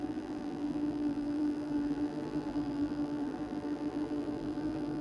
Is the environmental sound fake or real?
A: fake